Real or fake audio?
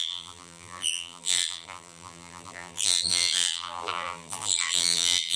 fake